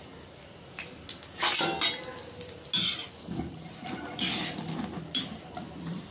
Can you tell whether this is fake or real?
real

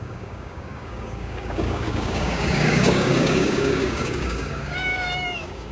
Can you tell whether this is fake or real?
fake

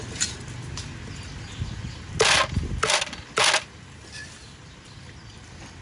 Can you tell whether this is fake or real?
real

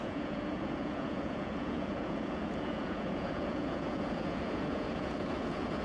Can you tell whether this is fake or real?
fake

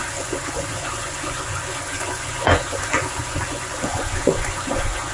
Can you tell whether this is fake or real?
fake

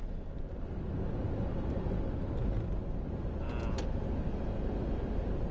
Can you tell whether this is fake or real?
real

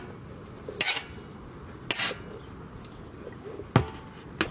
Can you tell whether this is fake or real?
real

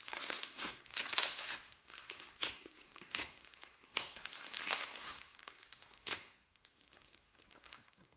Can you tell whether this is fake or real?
fake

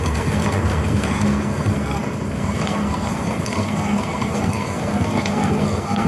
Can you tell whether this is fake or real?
fake